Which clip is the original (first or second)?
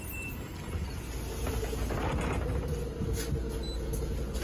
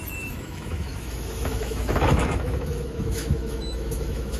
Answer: first